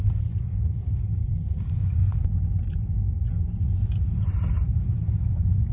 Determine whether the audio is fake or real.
fake